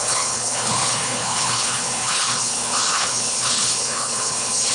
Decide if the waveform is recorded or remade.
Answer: remade